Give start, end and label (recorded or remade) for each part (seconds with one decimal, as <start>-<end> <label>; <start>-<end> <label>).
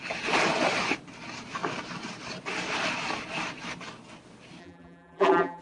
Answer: 0.0-4.6 recorded; 4.6-5.6 remade